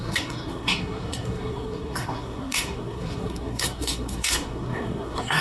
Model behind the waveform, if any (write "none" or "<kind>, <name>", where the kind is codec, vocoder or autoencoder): codec, SNAC